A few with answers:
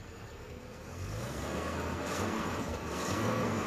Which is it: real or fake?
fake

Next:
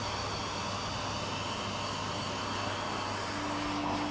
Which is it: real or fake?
real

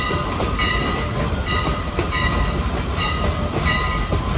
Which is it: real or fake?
real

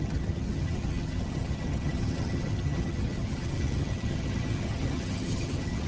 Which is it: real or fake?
fake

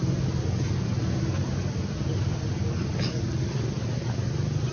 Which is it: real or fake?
real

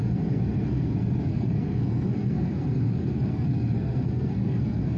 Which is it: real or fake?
fake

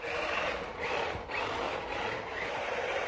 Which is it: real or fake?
fake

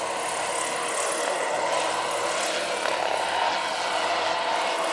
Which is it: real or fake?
real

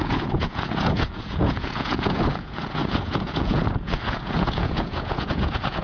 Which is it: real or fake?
fake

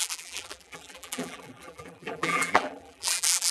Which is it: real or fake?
fake